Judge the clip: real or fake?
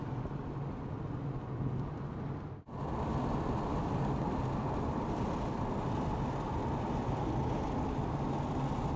real